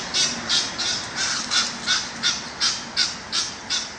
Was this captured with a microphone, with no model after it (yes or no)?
yes